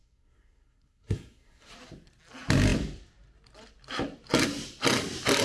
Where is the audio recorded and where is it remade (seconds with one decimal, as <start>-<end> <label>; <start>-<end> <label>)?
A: 0.0-1.7 remade; 1.7-5.4 recorded